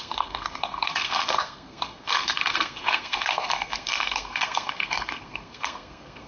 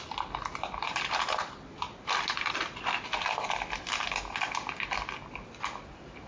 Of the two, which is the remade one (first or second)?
first